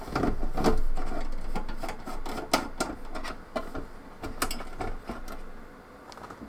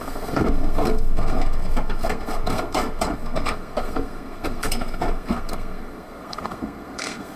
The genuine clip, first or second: first